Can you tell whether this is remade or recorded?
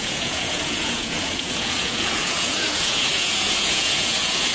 remade